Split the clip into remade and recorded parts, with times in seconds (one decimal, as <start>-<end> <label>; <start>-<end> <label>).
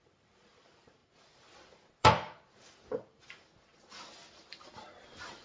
0.0-5.4 recorded